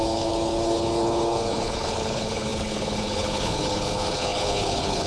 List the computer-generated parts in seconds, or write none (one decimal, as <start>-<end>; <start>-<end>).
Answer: 0.0-5.1